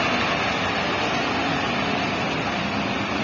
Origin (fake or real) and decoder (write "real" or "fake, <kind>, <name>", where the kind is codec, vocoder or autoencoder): real